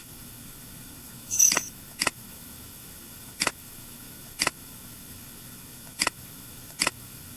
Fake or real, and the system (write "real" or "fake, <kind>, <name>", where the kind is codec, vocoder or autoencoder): fake, autoencoder, DAC-VAE